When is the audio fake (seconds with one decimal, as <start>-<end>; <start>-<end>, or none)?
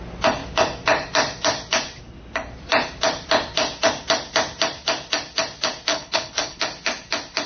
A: 5.9-6.6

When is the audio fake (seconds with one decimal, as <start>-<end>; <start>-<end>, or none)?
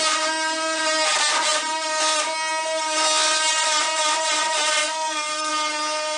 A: 4.8-5.5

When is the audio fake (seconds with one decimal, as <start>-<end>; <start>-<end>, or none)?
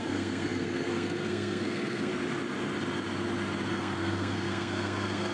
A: 0.0-2.1; 3.7-5.3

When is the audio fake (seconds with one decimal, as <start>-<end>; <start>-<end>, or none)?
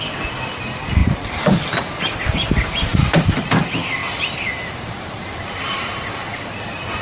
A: 2.9-3.5; 4.0-5.8; 6.3-7.0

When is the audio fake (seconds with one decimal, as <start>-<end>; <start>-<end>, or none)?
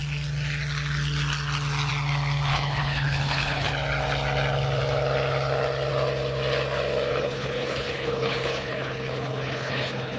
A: 2.5-3.7; 7.1-10.2